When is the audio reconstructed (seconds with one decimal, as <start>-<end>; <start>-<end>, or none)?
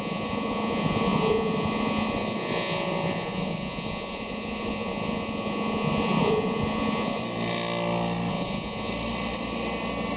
0.0-7.2; 8.3-8.9